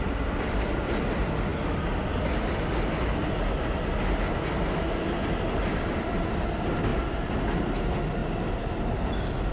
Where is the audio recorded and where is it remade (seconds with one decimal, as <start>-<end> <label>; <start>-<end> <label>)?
0.0-9.5 recorded